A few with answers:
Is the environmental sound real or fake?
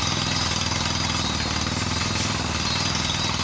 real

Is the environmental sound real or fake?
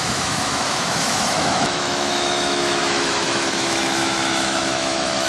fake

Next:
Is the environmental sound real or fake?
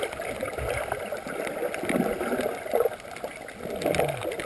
real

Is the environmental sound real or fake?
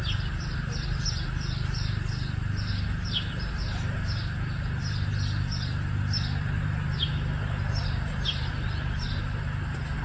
real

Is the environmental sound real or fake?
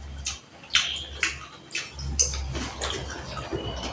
real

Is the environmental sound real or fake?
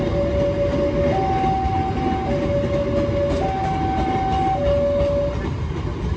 real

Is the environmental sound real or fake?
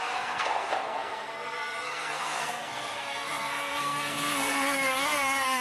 fake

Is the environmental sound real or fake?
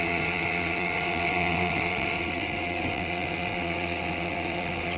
fake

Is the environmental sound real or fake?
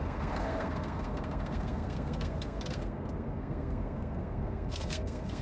fake